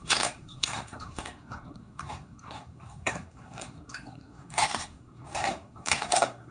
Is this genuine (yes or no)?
no